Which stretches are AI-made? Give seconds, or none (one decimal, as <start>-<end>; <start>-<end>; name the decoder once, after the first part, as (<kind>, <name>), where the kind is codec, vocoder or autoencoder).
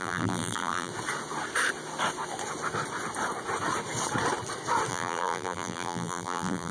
0.0-0.9 (vocoder, BigVGAN v2); 4.9-6.7